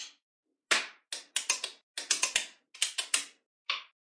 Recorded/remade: recorded